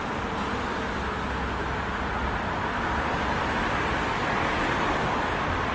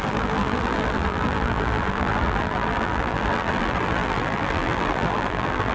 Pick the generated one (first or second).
second